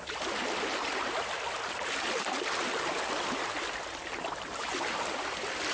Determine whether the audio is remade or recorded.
recorded